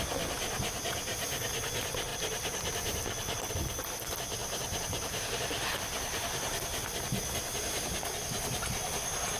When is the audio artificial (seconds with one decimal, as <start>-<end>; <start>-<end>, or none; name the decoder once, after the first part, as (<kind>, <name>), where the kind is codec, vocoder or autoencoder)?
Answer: 2.1-3.5 (vocoder, BigVGAN v2); 4.4-5.3